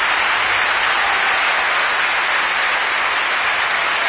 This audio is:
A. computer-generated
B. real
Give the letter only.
B